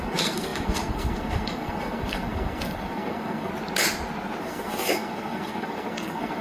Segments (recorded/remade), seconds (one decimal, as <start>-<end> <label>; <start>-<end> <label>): 0.0-3.5 remade; 3.5-4.4 recorded; 4.4-6.4 remade